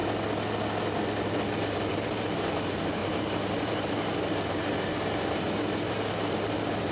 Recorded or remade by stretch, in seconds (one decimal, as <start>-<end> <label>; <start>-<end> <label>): 0.0-1.9 recorded; 1.9-6.9 remade